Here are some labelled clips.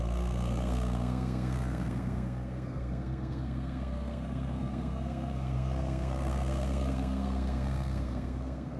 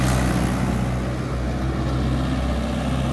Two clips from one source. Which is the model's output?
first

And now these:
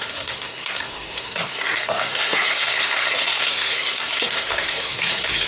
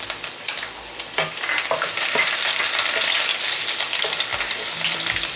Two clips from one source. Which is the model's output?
first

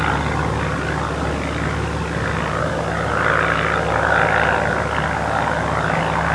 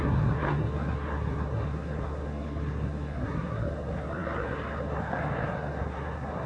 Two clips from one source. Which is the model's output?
second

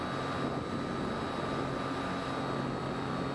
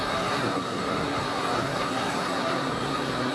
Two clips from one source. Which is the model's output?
second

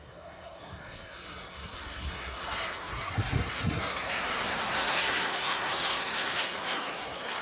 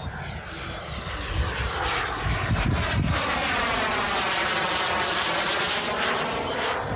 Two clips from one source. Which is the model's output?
first